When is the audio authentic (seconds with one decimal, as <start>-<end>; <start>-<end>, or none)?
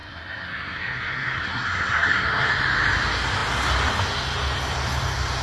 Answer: 2.5-5.4